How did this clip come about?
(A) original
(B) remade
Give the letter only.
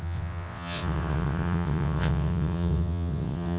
B